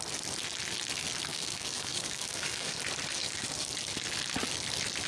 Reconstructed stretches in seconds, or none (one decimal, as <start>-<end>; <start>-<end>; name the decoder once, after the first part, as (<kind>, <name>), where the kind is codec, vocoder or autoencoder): 1.3-2.8 (codec, DAC); 3.2-3.7